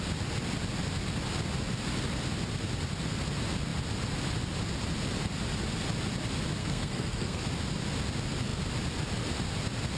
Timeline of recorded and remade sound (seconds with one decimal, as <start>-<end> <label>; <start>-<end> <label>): 0.0-6.6 recorded; 6.6-7.4 remade; 7.4-10.0 recorded